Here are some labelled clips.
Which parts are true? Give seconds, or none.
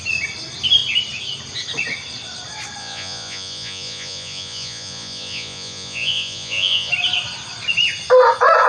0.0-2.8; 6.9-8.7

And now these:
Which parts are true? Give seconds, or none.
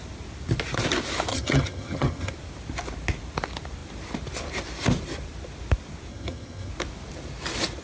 0.0-1.3; 2.3-6.1; 6.7-7.8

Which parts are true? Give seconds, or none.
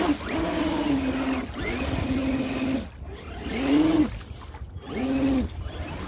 0.0-6.1